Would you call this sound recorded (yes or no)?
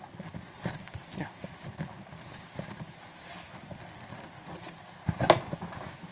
yes